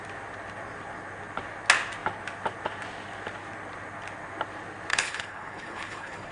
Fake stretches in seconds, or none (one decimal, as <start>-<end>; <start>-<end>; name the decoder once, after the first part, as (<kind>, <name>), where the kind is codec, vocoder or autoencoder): 4.9-6.3 (codec, HILCodec)